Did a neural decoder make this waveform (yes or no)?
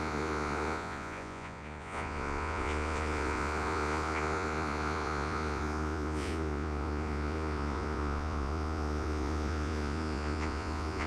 yes